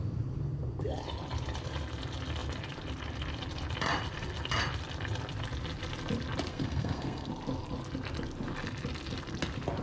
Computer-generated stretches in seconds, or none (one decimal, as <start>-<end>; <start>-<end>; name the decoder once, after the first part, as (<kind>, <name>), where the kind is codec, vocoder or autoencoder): 6.5-7.3 (codec, SNAC)